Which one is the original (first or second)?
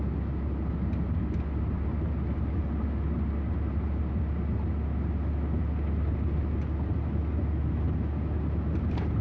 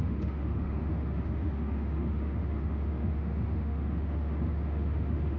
first